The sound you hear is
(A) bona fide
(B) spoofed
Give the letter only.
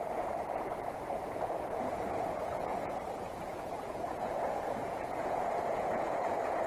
B